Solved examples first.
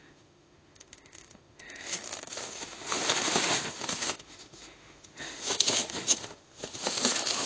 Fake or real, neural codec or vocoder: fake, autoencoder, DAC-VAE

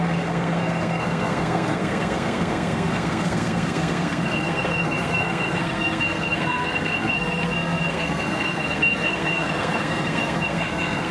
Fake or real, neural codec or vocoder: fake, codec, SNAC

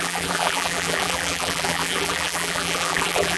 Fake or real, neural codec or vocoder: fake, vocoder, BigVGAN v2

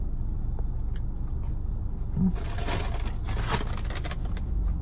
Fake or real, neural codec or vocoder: real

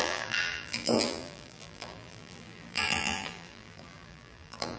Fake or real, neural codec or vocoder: fake, vocoder, BigVGAN v2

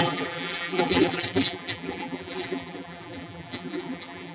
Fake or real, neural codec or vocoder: fake, vocoder, BigVGAN v2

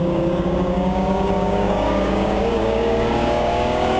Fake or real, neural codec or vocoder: fake, codec, DAC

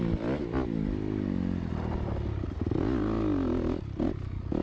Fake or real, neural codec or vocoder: real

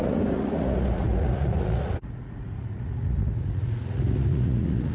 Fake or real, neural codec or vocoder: fake, vocoder, Vocos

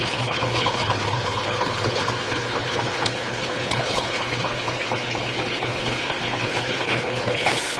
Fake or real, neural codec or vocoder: fake, codec, HILCodec